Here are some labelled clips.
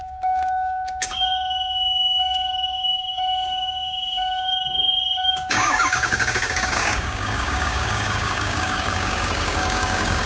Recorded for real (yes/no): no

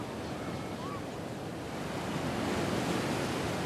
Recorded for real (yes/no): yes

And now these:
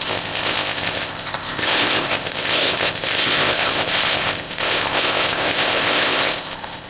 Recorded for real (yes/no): no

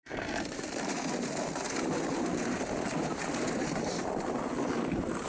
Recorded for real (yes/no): yes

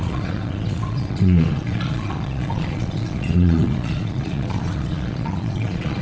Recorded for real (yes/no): no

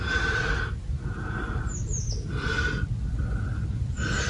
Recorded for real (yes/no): yes